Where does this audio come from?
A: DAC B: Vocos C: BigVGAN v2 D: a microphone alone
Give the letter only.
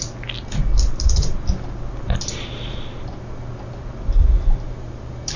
D